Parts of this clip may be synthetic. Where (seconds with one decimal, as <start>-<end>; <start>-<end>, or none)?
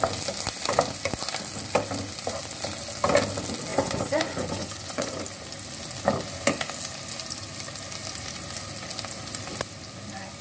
3.7-5.2